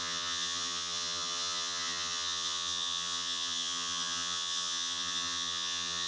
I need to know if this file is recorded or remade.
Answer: remade